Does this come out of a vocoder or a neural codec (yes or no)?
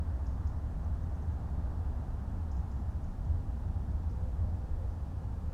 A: no